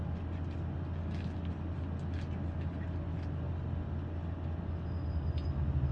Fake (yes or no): no